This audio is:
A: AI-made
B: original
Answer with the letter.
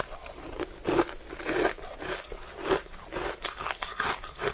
B